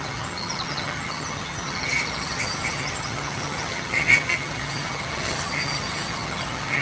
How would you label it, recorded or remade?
remade